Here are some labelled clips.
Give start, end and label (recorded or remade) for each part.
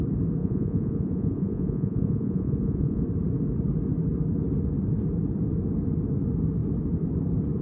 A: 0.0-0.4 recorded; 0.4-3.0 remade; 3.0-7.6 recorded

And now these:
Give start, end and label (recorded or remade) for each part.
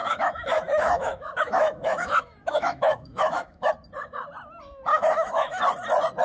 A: 0.0-3.7 remade; 3.7-4.9 recorded; 4.9-5.6 remade; 5.6-6.2 recorded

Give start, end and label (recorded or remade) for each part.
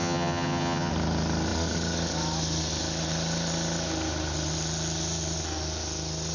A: 0.0-0.9 remade; 0.9-6.3 recorded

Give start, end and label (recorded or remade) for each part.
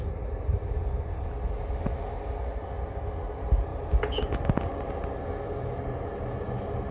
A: 0.0-3.7 recorded; 3.7-4.9 remade; 4.9-6.9 recorded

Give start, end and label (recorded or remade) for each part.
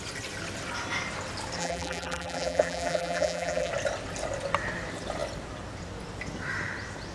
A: 0.0-1.6 recorded; 1.6-3.7 remade; 3.7-7.1 recorded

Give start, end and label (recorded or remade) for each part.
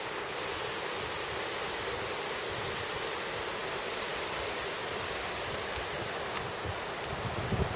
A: 0.0-7.8 recorded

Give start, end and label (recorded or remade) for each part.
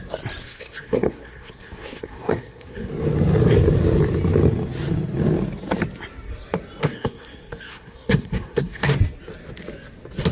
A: 0.0-0.4 recorded; 0.4-2.9 remade; 2.9-6.8 recorded; 6.8-8.9 remade; 8.9-10.3 recorded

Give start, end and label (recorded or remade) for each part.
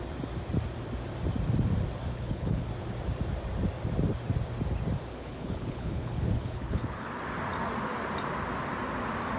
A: 0.0-2.1 recorded; 2.1-2.7 remade; 2.7-5.1 recorded; 5.1-7.1 remade; 7.1-9.4 recorded